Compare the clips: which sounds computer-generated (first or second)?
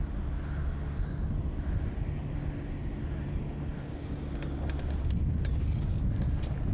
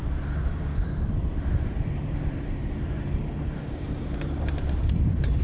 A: second